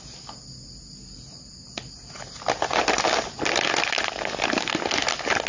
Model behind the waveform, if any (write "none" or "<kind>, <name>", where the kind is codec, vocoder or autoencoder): none